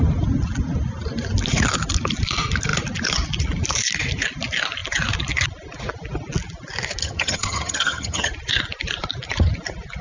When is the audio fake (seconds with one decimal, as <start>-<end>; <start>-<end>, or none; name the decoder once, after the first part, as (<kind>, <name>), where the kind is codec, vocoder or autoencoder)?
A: 7.0-8.3 (vocoder, HiFi-GAN)